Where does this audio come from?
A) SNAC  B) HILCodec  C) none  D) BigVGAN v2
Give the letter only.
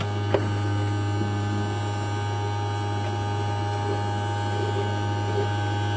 C